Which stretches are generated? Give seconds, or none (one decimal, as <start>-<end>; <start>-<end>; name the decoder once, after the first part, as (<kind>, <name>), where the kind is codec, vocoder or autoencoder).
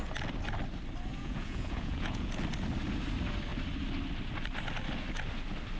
1.1-2.3 (vocoder, Vocos)